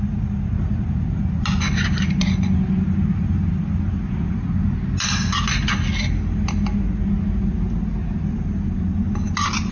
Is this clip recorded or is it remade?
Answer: recorded